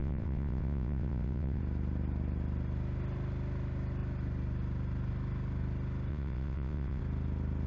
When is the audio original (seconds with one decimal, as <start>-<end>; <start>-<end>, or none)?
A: 1.6-6.1; 7.0-7.7